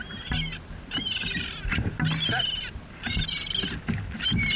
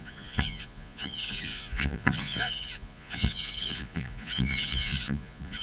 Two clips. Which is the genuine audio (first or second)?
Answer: first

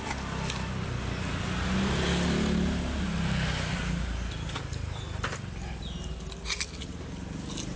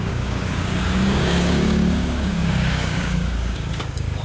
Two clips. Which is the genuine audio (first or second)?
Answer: first